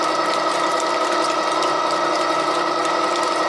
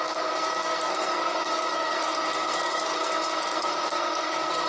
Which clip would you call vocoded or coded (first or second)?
second